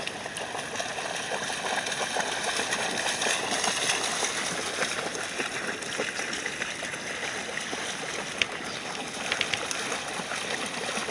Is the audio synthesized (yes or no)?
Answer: no